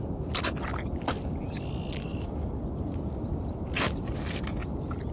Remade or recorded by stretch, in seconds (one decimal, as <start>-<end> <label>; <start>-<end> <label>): 0.0-2.0 recorded; 2.0-2.6 remade; 2.6-5.1 recorded